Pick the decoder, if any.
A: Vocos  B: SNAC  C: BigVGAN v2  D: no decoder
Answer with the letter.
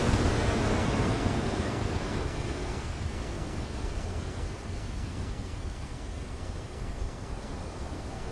B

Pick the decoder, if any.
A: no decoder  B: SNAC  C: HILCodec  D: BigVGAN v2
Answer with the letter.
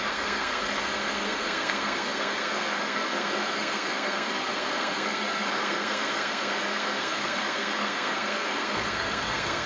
B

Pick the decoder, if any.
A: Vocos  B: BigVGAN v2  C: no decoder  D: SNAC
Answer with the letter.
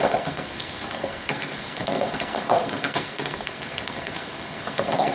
D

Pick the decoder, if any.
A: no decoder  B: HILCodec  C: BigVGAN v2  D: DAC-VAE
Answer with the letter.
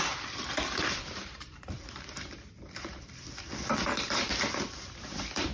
C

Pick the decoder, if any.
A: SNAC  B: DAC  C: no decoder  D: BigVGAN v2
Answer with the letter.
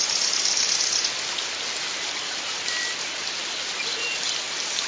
C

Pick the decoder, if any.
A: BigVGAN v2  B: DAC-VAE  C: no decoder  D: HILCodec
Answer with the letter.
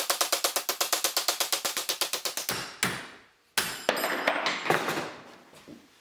C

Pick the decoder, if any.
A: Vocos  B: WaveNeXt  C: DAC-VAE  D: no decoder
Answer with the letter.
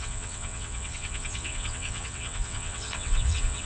B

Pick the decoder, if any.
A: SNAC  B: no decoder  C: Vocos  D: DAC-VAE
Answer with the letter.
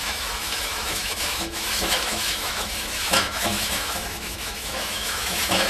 D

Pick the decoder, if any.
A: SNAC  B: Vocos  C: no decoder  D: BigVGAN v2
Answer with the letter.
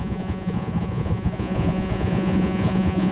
B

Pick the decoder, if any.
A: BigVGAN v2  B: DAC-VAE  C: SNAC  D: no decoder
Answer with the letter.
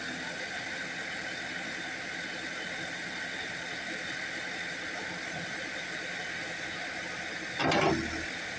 D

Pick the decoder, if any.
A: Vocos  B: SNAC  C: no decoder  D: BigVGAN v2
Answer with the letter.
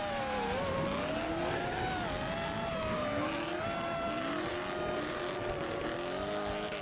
C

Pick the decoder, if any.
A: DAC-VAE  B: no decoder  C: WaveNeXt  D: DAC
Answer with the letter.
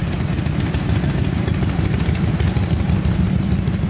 B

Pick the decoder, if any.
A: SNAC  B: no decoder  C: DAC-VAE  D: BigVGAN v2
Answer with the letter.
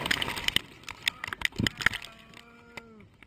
B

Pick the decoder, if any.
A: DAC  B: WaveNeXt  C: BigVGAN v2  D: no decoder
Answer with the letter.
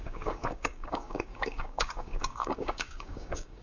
A